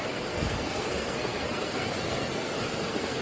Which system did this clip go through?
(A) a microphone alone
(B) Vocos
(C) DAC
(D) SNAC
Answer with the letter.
D